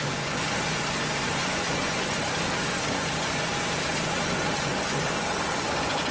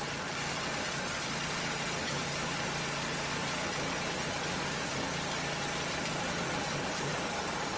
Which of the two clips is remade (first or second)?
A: first